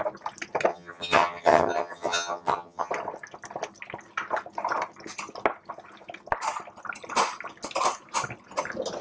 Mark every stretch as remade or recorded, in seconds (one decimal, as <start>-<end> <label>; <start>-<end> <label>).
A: 0.0-0.7 recorded; 0.7-2.9 remade; 2.9-9.0 recorded